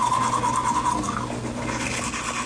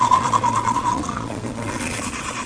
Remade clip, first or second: second